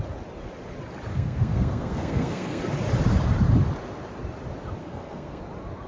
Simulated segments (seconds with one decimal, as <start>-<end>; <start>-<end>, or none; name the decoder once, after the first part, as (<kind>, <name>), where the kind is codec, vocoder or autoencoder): 1.1-2.6 (codec, SNAC); 4.8-5.4